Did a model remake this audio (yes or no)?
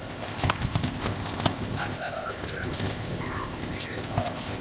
yes